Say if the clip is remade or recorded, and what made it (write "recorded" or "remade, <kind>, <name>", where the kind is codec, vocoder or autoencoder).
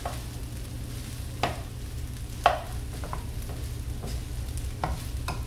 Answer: recorded